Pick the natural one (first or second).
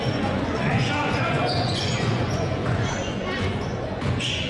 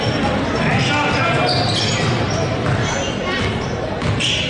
second